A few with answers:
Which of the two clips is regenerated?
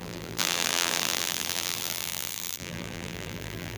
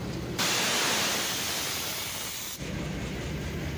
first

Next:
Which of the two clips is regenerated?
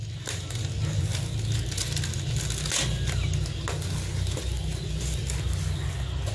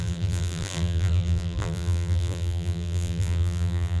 second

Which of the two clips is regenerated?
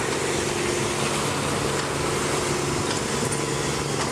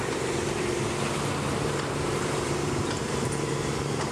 second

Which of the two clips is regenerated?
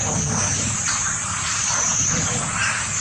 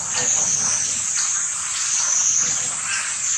first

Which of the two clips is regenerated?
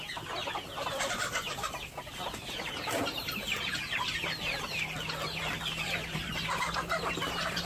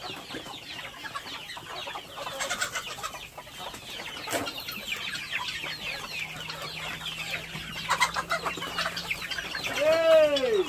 first